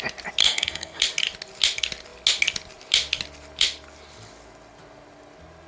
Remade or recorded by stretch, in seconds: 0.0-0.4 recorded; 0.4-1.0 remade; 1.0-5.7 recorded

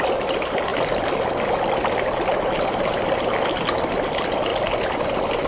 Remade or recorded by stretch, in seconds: 0.0-5.5 recorded

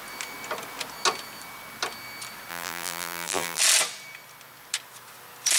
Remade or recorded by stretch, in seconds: 0.0-2.5 recorded; 2.5-3.6 remade; 3.6-5.6 recorded